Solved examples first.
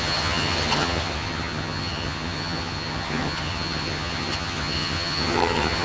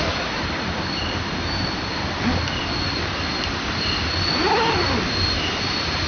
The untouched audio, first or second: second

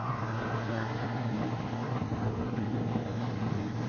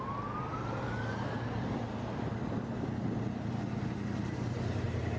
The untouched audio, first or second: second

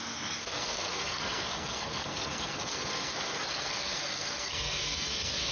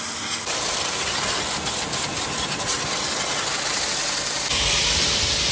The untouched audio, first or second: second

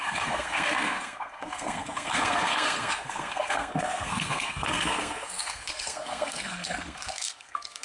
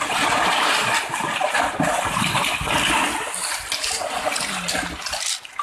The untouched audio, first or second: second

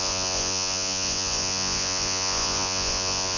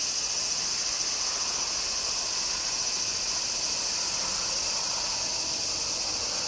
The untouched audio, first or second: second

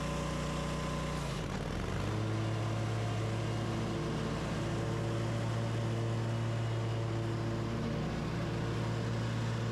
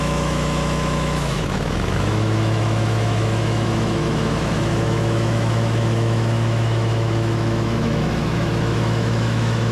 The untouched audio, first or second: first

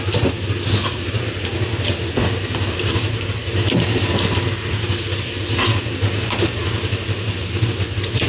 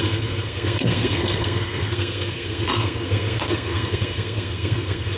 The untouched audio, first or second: first